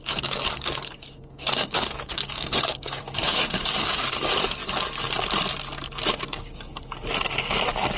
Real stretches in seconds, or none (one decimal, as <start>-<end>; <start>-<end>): 4.6-6.1; 6.7-7.4